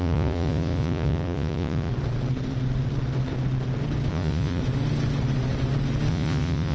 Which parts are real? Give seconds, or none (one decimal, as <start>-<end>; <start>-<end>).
1.9-4.1; 4.6-6.1